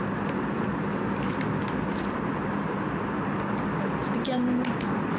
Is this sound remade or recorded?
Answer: recorded